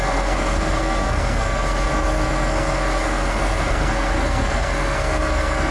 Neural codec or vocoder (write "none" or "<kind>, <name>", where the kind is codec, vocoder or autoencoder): codec, SNAC